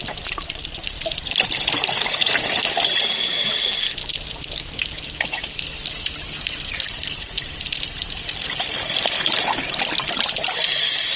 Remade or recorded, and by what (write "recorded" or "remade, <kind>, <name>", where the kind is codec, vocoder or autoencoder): recorded